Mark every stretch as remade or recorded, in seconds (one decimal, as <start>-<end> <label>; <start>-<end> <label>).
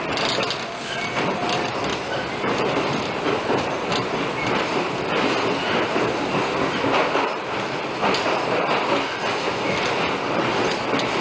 0.0-1.9 recorded; 1.9-5.1 remade; 5.1-11.2 recorded